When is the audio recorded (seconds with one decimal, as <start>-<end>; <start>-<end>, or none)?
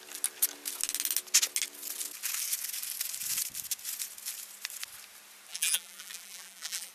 0.0-5.5